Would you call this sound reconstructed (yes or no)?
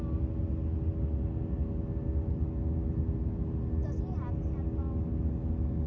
no